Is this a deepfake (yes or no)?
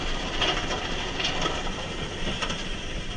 no